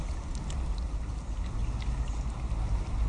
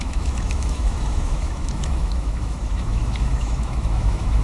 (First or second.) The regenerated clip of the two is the second